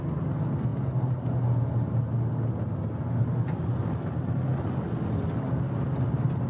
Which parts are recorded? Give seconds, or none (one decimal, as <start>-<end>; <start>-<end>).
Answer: 0.0-6.5

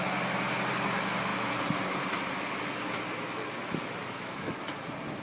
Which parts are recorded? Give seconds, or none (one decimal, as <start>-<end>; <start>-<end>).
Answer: 0.0-4.0; 4.5-5.2

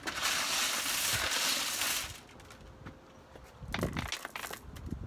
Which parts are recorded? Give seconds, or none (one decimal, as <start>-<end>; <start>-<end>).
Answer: 0.0-5.1

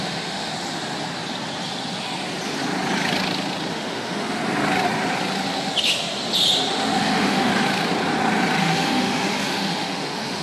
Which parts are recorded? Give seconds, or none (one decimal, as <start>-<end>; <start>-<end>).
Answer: 0.5-3.7; 4.4-6.7; 7.5-8.6

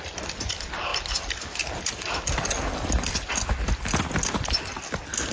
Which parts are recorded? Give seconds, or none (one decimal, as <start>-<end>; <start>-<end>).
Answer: 0.0-5.3